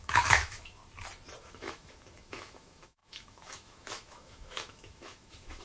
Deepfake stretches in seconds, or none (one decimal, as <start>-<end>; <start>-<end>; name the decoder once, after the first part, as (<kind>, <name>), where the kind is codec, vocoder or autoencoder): 0.0-0.8 (autoencoder, DAC-VAE); 1.4-5.6